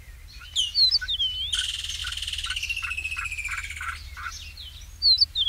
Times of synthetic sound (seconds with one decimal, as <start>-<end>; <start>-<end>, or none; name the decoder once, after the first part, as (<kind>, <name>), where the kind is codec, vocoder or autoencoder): none